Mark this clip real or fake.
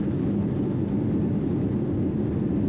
real